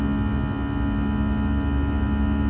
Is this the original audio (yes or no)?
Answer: yes